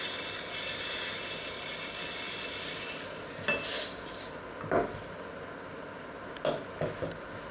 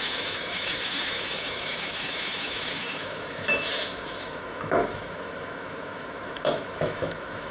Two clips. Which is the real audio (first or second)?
first